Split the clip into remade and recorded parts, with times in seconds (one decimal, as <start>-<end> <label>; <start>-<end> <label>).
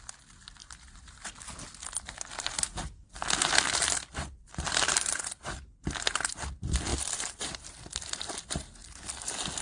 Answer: 0.0-0.6 recorded; 0.6-1.3 remade; 1.3-4.4 recorded; 4.4-5.2 remade; 5.2-6.9 recorded; 6.9-7.8 remade; 7.8-9.6 recorded